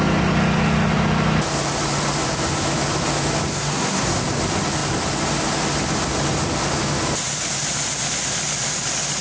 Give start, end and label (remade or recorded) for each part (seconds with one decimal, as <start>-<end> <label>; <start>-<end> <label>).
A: 0.0-3.5 recorded; 3.5-4.2 remade; 4.2-9.2 recorded